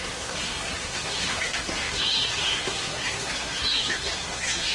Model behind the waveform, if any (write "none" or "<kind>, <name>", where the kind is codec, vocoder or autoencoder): codec, SNAC